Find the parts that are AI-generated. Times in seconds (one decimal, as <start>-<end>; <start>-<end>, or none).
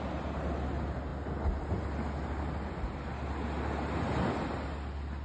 none